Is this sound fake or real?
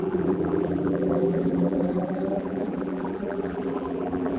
fake